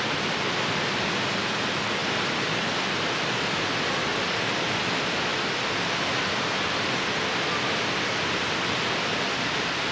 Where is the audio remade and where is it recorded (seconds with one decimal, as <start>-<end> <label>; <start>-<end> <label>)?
0.0-2.0 recorded; 2.0-4.1 remade; 4.1-5.3 recorded; 5.3-5.9 remade; 5.9-9.9 recorded